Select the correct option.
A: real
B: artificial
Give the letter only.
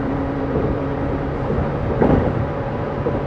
B